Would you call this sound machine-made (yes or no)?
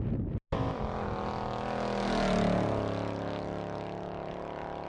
no